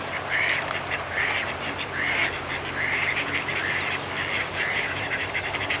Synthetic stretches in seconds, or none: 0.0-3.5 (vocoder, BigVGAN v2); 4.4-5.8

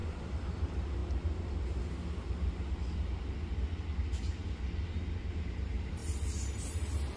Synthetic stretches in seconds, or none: 0.0-1.0 (vocoder, BigVGAN v2); 5.3-7.2